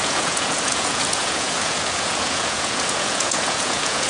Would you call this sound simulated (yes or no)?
yes